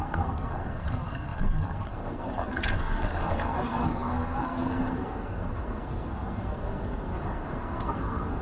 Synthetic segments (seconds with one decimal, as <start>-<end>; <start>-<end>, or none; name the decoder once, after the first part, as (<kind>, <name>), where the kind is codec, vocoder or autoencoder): 0.0-8.4 (codec, SNAC)